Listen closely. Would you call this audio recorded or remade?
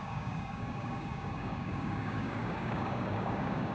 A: remade